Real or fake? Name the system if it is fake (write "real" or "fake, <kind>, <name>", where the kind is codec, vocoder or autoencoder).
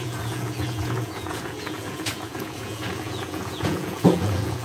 fake, vocoder, Vocos